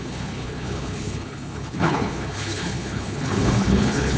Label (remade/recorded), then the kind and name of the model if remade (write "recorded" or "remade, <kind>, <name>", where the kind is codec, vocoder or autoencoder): remade, codec, HILCodec